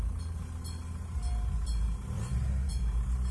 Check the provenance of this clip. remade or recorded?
recorded